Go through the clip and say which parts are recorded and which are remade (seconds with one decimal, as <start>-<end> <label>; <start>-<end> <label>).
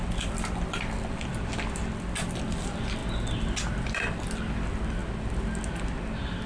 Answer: 0.0-1.3 remade; 1.3-2.4 recorded; 2.4-3.0 remade; 3.0-3.7 recorded; 3.7-5.0 remade; 5.0-6.5 recorded